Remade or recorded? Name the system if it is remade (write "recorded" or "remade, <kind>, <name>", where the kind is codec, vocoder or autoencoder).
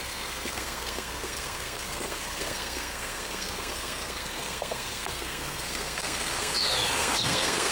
remade, codec, SNAC